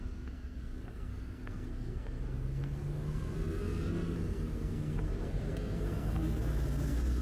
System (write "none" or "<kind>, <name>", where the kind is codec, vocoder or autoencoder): codec, SNAC